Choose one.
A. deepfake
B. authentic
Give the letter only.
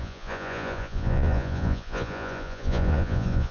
A